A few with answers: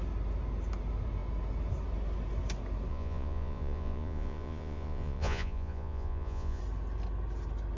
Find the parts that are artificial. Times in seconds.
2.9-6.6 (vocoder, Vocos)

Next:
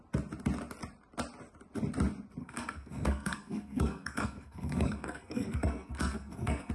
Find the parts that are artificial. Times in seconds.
2.4-6.7 (codec, SNAC)

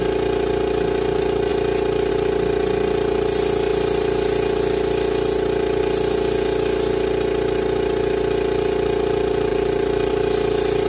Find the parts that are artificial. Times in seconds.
9.5-10.1 (vocoder, BigVGAN v2)

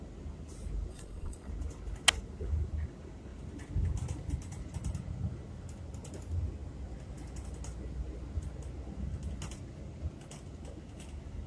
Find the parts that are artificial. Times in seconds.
0.9-1.5 (vocoder, Vocos)

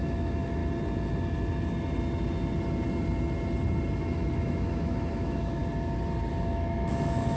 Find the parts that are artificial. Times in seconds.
0.0-0.6 (autoencoder, DAC-VAE); 4.0-5.6; 6.3-7.4

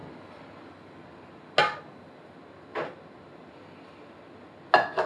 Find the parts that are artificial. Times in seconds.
none

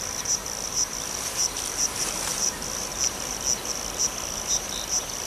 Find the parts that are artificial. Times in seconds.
0.0-2.9 (vocoder, BigVGAN v2); 4.0-5.3